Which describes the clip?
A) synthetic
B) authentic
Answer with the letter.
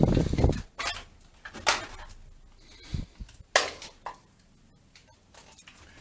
B